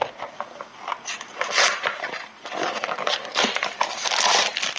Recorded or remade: recorded